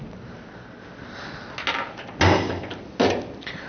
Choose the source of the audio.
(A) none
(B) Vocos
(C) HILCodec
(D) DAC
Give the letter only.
A